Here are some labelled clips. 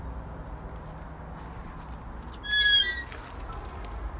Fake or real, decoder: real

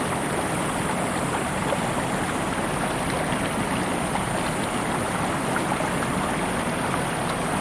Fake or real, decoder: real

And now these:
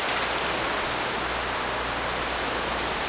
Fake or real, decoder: real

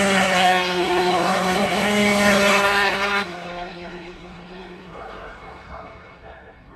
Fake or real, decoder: fake, codec, SNAC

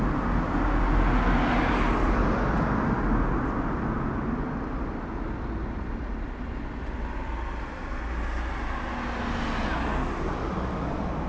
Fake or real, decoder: real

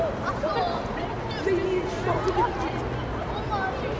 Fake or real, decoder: real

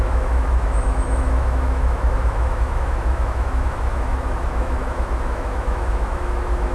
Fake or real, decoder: fake, autoencoder, DAC-VAE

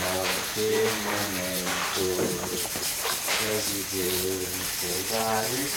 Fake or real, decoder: fake, vocoder, BigVGAN v2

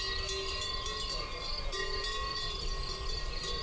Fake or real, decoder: real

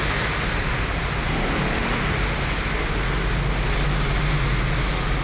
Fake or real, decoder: real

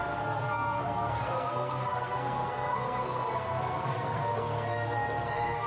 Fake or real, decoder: fake, codec, SNAC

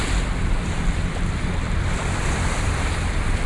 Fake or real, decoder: fake, vocoder, BigVGAN v2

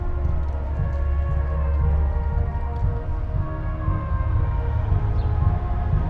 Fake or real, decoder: real